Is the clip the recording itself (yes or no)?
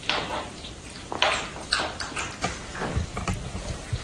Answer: no